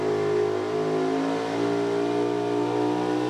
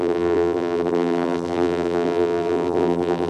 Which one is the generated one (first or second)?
second